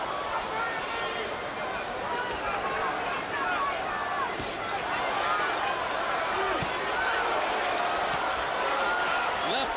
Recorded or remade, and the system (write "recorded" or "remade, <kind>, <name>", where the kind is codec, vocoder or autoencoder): recorded